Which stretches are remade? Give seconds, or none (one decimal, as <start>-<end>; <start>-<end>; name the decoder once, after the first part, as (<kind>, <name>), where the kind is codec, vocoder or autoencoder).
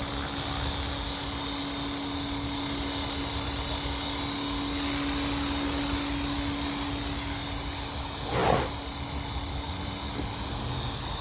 none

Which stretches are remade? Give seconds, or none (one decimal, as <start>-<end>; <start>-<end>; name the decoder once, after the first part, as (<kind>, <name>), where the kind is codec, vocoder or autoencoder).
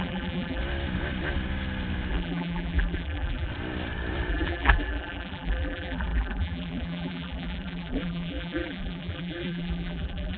0.0-0.6 (vocoder, BigVGAN v2); 2.1-3.5; 4.3-10.4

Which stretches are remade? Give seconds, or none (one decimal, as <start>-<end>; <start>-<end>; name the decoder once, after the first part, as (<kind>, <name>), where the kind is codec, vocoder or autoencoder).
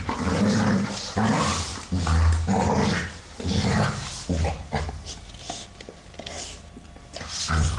0.0-1.7 (vocoder, BigVGAN v2); 5.1-7.8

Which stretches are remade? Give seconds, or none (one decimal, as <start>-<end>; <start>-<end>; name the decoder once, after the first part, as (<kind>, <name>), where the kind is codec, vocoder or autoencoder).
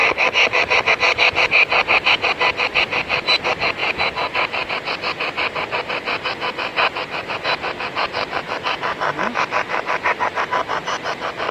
3.8-4.7 (vocoder, BigVGAN v2); 6.7-7.3